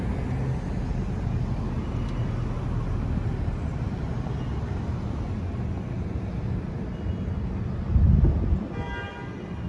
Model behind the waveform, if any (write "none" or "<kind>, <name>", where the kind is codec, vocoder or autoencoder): none